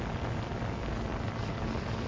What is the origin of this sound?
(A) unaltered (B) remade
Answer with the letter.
A